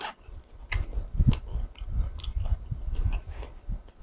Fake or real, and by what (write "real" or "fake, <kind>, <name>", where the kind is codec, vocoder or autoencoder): real